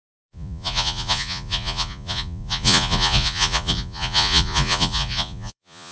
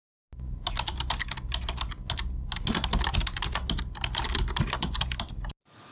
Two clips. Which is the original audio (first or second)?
second